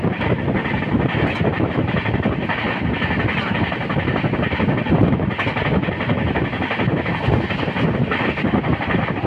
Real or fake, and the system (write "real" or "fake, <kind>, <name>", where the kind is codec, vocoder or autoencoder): real